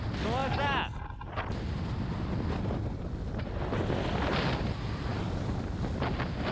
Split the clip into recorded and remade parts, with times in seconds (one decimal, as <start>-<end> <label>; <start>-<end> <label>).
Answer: 0.0-6.5 recorded